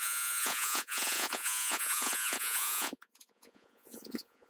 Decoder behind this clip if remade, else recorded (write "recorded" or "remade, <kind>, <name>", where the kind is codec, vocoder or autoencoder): remade, vocoder, Vocos